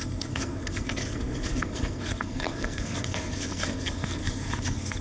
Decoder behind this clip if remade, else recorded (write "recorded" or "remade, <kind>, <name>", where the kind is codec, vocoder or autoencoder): remade, codec, SNAC